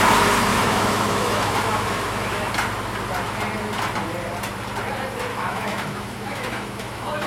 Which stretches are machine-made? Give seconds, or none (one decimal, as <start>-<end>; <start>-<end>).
0.5-2.5; 5.3-7.3